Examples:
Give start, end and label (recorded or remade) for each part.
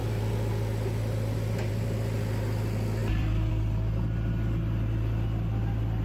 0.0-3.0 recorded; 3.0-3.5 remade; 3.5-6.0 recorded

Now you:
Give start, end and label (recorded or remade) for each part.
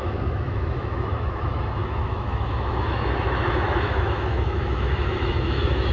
0.0-5.9 remade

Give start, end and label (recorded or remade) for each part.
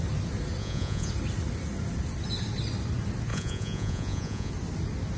0.0-0.6 recorded; 0.6-1.1 remade; 1.1-3.3 recorded; 3.3-4.5 remade; 4.5-5.2 recorded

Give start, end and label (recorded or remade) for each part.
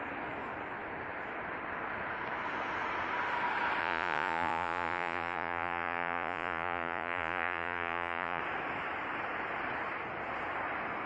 0.0-3.8 recorded; 3.8-8.4 remade; 8.4-11.1 recorded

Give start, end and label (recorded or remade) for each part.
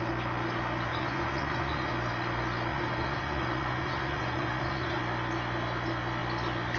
0.0-0.9 recorded; 0.9-1.9 remade; 1.9-2.7 recorded; 2.7-5.0 remade; 5.0-6.8 recorded